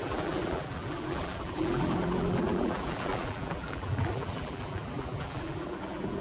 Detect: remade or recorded remade